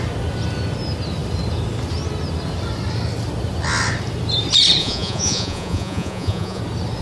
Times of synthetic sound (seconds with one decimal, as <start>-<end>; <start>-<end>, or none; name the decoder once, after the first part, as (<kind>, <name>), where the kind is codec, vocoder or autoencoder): 4.8-6.6 (vocoder, Vocos)